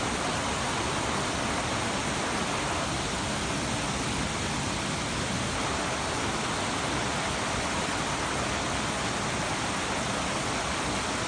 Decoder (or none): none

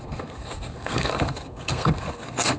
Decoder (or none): codec, SNAC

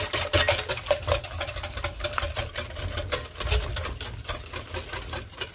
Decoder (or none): none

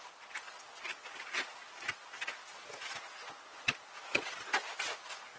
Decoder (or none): none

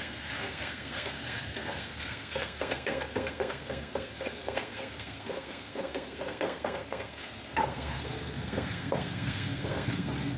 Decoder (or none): codec, SNAC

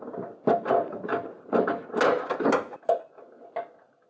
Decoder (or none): none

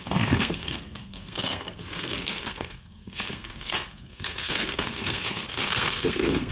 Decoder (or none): codec, SNAC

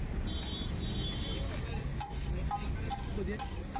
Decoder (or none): none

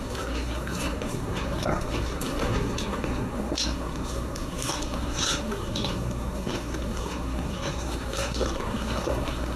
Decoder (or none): codec, SNAC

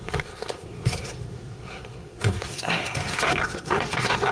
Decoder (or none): codec, SNAC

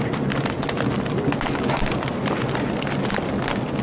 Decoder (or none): none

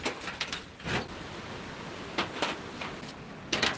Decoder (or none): none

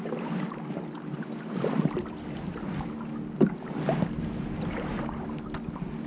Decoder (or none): none